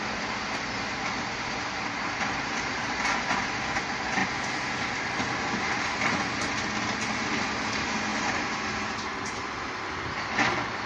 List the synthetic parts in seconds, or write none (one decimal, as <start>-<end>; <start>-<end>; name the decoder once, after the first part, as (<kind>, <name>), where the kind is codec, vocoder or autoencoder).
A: none